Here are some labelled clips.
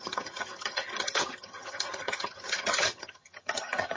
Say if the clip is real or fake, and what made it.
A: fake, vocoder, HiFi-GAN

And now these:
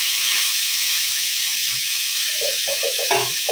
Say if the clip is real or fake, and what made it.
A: fake, autoencoder, DAC-VAE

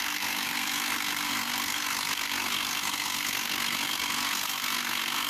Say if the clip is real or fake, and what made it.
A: fake, codec, SNAC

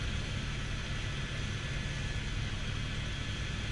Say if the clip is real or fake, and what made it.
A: real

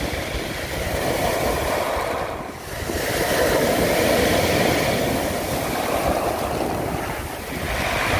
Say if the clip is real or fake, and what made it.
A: real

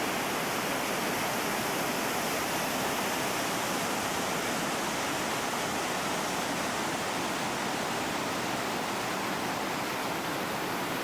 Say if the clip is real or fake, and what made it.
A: real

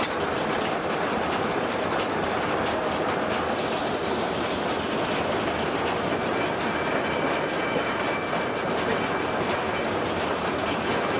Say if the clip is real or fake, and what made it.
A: real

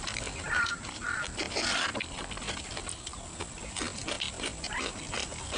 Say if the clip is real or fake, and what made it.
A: real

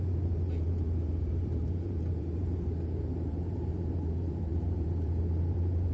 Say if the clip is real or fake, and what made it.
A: fake, vocoder, BigVGAN v2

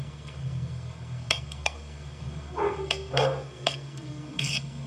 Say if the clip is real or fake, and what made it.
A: fake, codec, SNAC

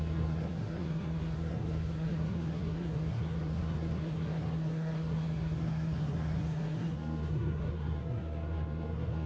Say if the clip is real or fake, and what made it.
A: fake, codec, SNAC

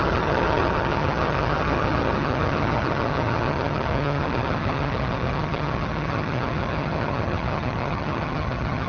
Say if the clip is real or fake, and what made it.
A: fake, vocoder, HiFi-GAN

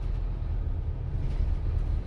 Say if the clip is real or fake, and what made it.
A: real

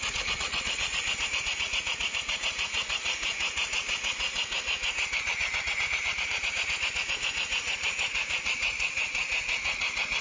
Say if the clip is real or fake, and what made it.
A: fake, vocoder, Vocos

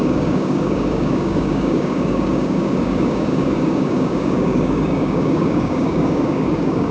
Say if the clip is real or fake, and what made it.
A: fake, codec, DAC